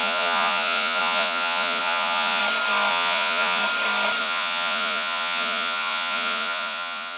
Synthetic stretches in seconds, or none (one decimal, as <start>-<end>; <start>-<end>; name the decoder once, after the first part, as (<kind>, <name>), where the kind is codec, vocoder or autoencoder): 0.0-2.4 (vocoder, Vocos); 2.9-3.6; 4.2-7.2

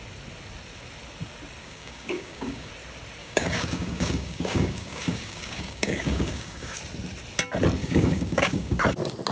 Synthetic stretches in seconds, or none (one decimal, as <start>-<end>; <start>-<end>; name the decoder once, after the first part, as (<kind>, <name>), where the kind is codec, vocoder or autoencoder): 1.6-2.7 (codec, DAC); 3.2-6.8; 7.8-8.8

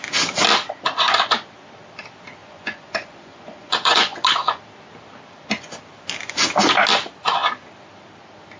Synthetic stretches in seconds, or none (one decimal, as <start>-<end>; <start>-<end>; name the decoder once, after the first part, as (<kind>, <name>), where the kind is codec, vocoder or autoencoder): 2.4-4.6 (vocoder, Vocos)

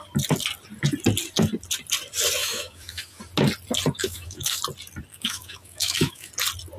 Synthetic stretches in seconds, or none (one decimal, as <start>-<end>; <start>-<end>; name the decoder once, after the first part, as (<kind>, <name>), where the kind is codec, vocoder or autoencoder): 2.4-3.2 (autoencoder, DAC-VAE); 4.0-4.6; 5.1-6.3

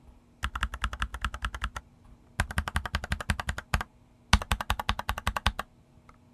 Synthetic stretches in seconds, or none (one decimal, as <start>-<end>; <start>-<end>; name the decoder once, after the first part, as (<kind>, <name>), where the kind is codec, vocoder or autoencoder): none

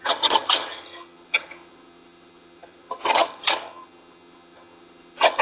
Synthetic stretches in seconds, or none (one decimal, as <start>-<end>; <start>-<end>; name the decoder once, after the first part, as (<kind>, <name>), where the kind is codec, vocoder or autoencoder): 0.0-5.4 (vocoder, HiFi-GAN)